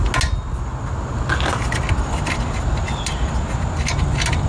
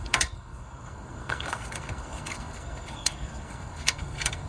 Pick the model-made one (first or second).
second